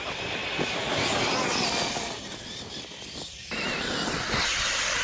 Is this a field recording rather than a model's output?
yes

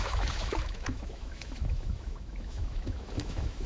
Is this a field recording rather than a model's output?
no